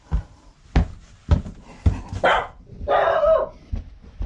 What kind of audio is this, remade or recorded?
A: recorded